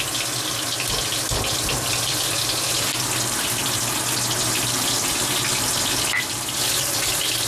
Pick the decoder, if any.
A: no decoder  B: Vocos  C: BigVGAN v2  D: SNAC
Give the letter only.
A